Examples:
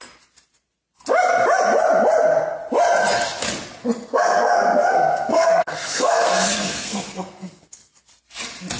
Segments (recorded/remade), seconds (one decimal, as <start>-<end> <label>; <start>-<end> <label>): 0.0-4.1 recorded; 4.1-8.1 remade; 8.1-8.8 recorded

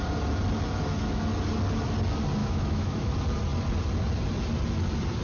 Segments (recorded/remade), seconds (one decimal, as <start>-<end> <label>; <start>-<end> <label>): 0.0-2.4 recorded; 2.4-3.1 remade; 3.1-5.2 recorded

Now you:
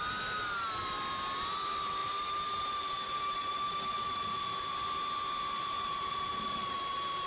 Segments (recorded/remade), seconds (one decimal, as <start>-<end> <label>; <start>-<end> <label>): 0.0-7.3 recorded